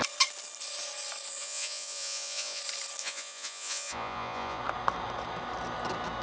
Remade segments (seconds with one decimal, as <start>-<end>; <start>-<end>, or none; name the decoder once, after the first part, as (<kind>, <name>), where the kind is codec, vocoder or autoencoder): 1.4-2.6 (vocoder, Vocos); 3.0-4.6